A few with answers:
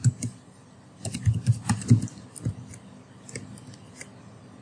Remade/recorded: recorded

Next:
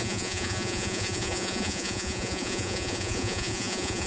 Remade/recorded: remade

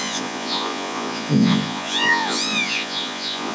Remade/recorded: remade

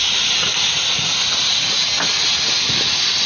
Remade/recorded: recorded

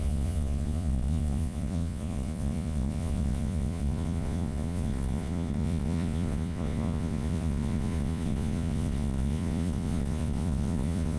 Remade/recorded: remade